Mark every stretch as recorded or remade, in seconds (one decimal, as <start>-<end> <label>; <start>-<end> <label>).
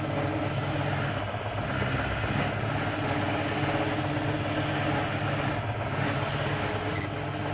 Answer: 0.0-7.5 recorded